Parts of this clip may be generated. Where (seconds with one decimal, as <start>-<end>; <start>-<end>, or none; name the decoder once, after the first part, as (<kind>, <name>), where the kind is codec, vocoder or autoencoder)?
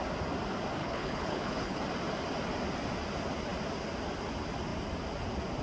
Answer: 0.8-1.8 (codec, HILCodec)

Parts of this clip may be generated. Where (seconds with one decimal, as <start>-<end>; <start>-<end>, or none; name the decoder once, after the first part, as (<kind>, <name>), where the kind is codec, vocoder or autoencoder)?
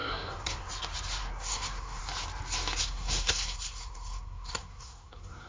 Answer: 0.0-0.7 (codec, SNAC); 1.2-2.0; 2.8-5.5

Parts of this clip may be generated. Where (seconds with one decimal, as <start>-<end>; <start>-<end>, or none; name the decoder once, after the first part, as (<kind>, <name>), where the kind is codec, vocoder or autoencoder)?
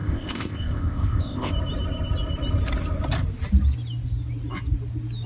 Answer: 0.0-1.5 (codec, ZipCodec)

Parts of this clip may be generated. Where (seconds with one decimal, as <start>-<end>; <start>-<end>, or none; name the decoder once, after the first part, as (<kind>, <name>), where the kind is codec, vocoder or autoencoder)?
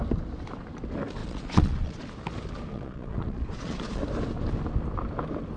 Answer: 1.2-2.0 (vocoder, Vocos); 2.7-4.0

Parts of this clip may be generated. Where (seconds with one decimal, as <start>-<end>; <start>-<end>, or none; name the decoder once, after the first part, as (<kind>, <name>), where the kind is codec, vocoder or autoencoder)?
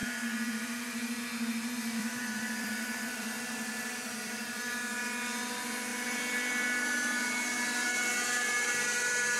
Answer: 0.0-1.2 (vocoder, BigVGAN v2); 2.0-5.0; 5.9-6.5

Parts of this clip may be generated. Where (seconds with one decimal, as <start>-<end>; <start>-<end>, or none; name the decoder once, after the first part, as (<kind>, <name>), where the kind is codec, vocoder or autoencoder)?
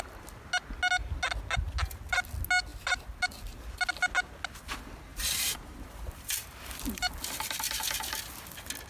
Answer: 5.1-7.1 (vocoder, BigVGAN v2)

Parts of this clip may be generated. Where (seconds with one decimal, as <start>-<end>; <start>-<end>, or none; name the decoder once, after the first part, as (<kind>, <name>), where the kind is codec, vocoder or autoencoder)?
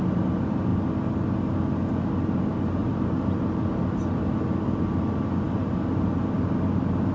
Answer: none